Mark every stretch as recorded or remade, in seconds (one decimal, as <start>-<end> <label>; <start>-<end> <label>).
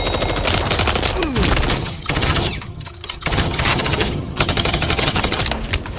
0.0-1.8 recorded; 1.8-5.4 remade; 5.4-6.0 recorded